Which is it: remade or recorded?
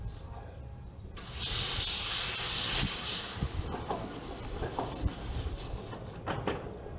recorded